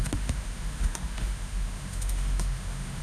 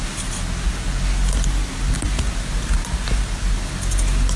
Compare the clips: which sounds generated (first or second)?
first